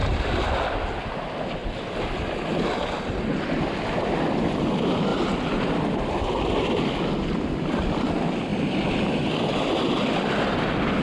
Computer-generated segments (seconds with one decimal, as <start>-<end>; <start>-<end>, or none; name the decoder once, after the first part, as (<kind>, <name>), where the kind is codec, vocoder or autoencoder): 0.0-0.5 (vocoder, BigVGAN v2); 1.6-2.4; 8.5-9.3